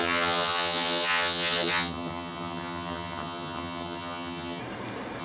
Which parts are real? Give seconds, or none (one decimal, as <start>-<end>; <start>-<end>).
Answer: 4.6-5.2